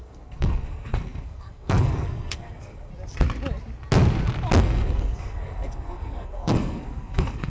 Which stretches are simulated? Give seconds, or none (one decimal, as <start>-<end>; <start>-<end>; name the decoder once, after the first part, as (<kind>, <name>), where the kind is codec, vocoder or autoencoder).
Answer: 0.0-2.9 (codec, SNAC); 4.6-7.5